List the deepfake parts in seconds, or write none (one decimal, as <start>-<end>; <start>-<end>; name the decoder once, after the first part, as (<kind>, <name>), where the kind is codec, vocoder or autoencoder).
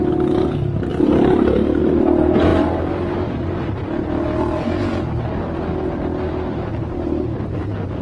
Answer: 0.9-1.8 (vocoder, BigVGAN v2); 2.5-4.1; 6.7-7.5